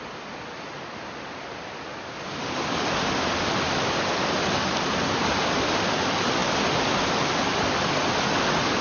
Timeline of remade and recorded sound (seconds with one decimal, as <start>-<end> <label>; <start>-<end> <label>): 0.0-8.8 recorded